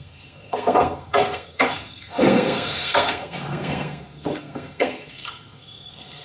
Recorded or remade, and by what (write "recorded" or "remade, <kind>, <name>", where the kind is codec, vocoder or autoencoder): remade, codec, SNAC